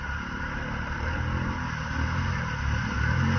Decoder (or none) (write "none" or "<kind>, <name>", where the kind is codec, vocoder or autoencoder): none